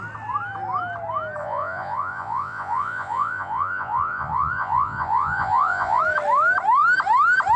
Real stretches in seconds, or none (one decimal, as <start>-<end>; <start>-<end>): 0.0-1.4; 6.0-7.6